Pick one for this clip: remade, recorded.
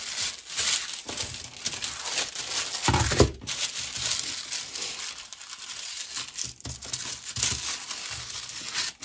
recorded